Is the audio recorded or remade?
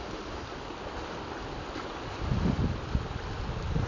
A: recorded